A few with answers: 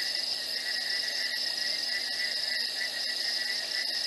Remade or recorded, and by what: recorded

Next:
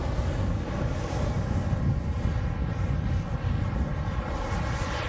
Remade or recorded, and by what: recorded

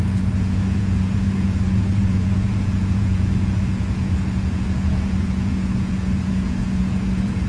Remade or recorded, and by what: remade, vocoder, Vocos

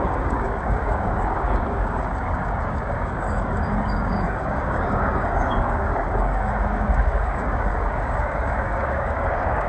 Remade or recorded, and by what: remade, codec, DAC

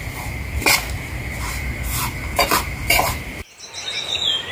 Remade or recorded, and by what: recorded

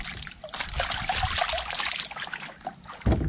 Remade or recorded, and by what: recorded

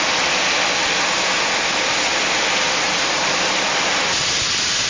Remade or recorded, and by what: recorded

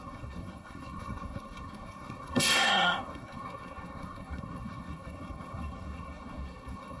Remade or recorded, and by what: remade, codec, SNAC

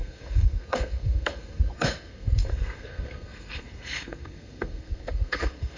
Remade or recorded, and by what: remade, codec, SNAC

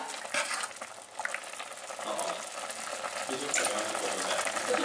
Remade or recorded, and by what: recorded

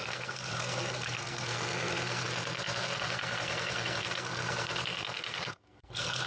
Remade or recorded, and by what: remade, codec, SNAC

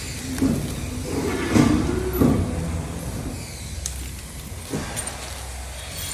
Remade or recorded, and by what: recorded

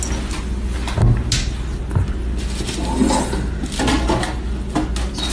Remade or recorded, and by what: recorded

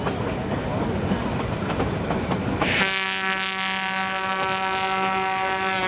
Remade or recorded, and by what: recorded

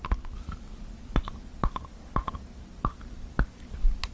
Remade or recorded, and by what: recorded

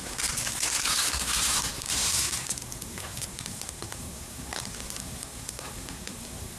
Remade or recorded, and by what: remade, codec, SNAC